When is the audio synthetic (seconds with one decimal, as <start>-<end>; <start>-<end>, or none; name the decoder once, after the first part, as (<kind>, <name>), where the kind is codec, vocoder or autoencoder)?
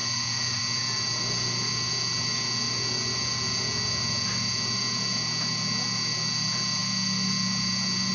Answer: none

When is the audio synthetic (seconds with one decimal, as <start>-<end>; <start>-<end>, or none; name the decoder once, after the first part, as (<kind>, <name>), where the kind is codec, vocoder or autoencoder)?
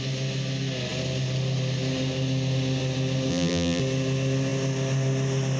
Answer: 3.3-3.8 (vocoder, BigVGAN v2)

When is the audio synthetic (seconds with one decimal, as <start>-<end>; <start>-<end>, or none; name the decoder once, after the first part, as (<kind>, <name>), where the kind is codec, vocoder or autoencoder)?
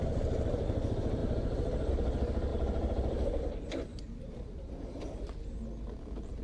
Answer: 1.2-1.9 (vocoder, BigVGAN v2); 2.5-3.5; 3.9-5.5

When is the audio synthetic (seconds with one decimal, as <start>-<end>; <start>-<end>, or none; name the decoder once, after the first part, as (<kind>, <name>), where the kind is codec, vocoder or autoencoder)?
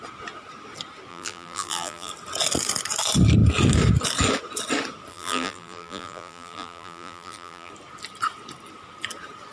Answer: 1.1-2.1 (vocoder, BigVGAN v2); 5.1-7.7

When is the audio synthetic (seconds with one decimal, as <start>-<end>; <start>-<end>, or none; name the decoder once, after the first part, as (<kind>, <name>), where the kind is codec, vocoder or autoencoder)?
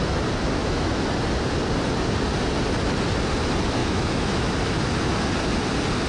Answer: 0.6-1.1 (autoencoder, DAC-VAE); 3.8-4.5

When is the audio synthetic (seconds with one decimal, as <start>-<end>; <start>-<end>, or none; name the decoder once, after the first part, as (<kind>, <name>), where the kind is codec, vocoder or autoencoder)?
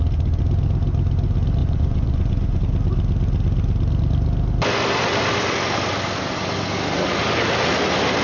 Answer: 1.6-2.6 (vocoder, Vocos)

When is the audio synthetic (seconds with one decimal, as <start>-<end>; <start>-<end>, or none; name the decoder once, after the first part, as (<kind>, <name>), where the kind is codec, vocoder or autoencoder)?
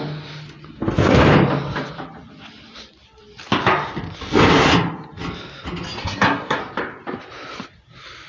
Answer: 6.0-6.6 (codec, SNAC)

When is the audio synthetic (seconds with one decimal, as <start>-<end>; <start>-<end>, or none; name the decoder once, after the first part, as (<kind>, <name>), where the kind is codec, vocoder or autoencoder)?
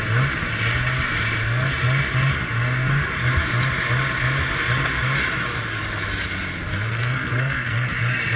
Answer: 6.7-8.0 (codec, SNAC)